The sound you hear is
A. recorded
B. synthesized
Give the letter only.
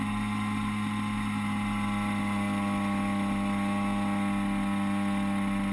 A